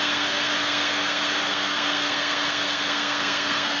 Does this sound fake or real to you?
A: fake